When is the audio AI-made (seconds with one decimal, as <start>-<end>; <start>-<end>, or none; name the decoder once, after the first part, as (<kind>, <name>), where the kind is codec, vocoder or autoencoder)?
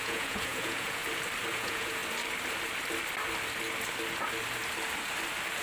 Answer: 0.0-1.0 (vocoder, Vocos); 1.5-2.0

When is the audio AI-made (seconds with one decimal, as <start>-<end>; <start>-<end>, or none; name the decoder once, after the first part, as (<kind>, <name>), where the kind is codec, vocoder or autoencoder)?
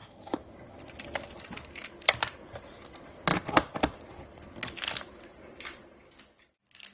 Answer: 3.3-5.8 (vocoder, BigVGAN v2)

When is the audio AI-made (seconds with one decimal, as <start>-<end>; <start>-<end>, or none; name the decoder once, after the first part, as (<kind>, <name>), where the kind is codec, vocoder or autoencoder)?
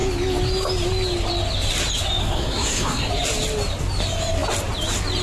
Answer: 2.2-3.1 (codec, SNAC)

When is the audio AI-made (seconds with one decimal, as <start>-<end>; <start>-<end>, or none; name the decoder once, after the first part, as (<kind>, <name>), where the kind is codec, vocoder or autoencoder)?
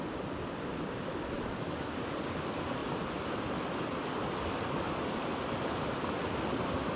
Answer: none